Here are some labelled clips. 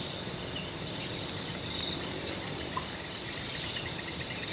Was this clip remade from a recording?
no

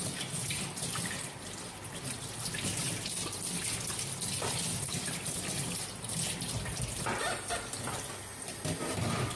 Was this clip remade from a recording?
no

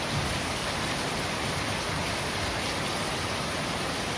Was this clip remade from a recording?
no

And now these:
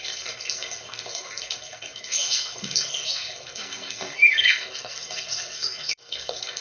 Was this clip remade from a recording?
yes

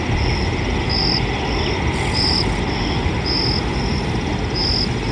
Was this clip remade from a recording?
no